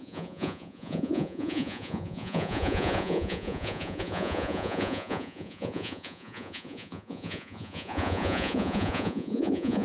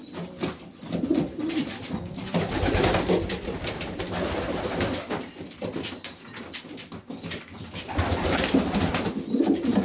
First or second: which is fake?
first